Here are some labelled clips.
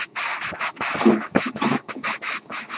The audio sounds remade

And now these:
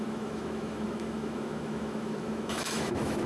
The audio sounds remade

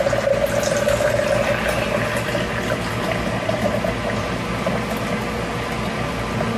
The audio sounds recorded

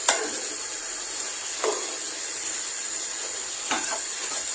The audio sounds recorded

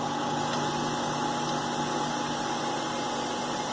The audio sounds recorded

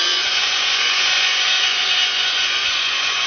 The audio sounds remade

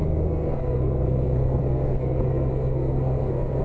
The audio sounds remade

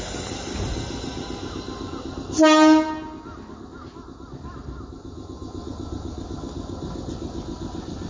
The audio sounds recorded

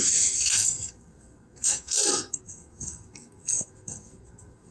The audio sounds remade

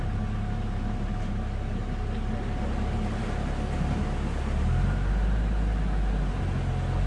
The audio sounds recorded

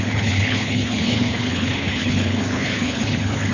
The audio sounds remade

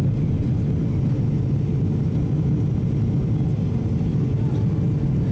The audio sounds recorded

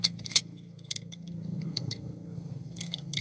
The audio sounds remade